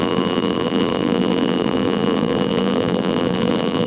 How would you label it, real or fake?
fake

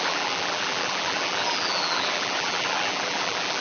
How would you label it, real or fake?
fake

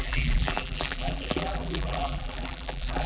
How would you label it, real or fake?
fake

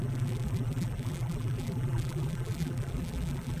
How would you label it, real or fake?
fake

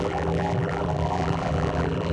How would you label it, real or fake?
fake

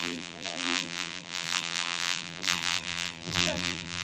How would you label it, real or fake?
fake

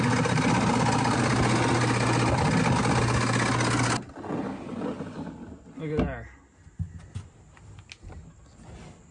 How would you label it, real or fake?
real